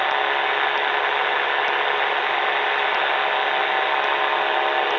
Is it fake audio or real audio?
real